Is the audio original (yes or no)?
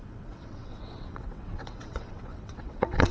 no